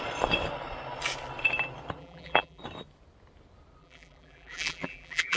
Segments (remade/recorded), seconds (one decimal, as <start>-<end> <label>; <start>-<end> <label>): 0.0-2.0 recorded; 2.0-2.6 remade; 2.6-3.8 recorded; 3.8-5.4 remade